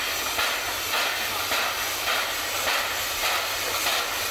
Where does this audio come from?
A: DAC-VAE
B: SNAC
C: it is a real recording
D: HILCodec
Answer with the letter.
C